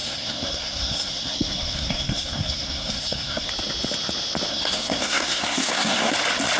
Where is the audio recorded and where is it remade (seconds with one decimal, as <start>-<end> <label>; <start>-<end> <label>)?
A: 0.0-3.5 remade; 3.5-4.5 recorded; 4.5-6.1 remade; 6.1-6.6 recorded